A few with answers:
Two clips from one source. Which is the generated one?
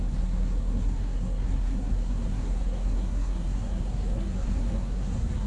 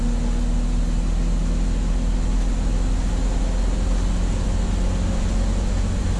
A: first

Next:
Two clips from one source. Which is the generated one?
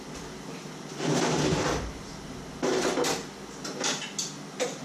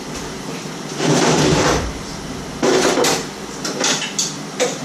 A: second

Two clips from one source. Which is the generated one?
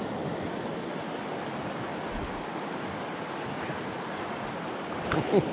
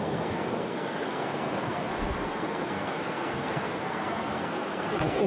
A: second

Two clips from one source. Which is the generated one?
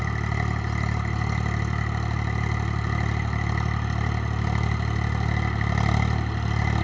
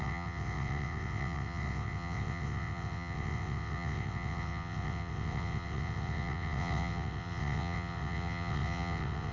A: second